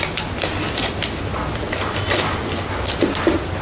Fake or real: real